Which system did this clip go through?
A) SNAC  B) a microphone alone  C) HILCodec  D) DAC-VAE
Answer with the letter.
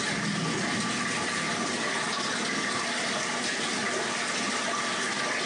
B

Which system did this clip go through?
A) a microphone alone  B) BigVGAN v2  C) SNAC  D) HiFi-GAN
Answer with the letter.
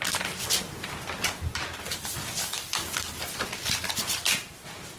B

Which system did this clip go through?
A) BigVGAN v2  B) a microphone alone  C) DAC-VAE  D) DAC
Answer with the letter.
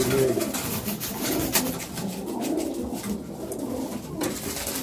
B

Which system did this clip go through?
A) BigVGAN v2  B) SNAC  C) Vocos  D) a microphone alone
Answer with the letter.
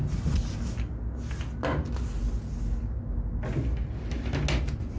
D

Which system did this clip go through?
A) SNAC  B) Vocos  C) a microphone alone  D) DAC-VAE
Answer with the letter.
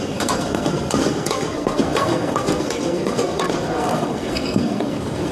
A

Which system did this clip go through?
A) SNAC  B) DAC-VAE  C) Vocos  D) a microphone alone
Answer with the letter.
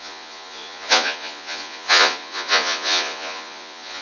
C